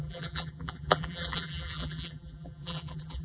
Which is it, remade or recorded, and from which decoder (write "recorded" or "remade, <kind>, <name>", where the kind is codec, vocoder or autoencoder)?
remade, vocoder, BigVGAN v2